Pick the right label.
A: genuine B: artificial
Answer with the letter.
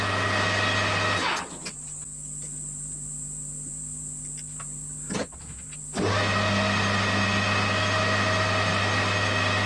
A